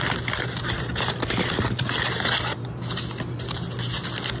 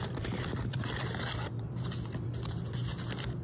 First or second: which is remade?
second